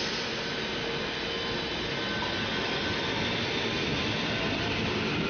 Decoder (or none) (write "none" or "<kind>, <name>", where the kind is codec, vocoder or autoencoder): none